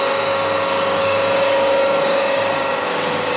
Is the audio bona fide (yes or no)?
no